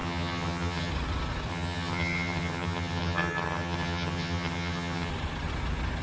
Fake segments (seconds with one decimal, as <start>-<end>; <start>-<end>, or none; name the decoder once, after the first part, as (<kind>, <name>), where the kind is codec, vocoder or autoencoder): 0.0-0.9 (vocoder, HiFi-GAN); 1.5-5.1